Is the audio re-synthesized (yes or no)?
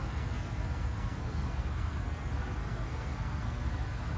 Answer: yes